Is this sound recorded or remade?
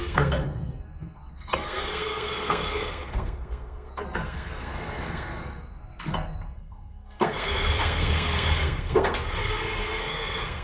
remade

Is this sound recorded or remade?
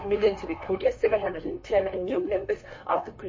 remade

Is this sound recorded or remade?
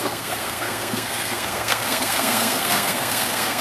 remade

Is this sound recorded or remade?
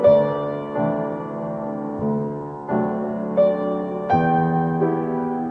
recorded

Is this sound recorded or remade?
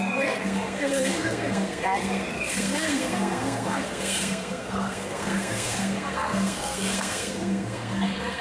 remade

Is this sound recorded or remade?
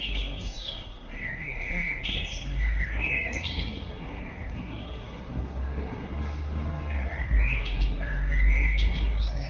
remade